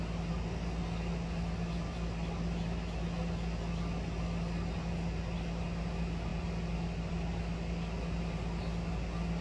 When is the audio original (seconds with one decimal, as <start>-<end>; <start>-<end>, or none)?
0.0-9.4